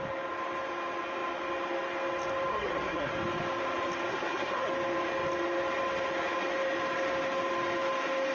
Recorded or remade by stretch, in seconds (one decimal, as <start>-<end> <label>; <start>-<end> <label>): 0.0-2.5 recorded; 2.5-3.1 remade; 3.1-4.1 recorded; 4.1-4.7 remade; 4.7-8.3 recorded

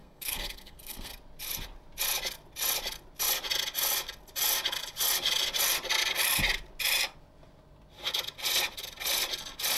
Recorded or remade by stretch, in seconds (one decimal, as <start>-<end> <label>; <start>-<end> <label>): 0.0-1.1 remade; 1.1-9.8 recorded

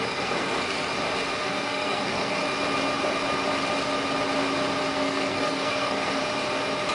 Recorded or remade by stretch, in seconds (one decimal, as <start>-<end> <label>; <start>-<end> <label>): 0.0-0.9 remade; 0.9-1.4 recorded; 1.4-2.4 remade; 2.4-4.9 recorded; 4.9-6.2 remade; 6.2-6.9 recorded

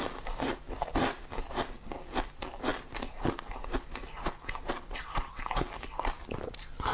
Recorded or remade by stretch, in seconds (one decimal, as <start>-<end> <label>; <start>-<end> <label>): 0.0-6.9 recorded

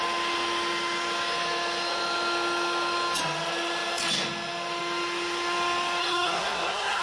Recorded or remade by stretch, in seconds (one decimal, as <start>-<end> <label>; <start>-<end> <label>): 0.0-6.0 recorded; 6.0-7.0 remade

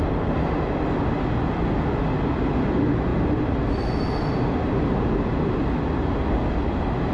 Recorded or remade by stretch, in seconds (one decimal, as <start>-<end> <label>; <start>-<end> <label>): 0.0-7.1 recorded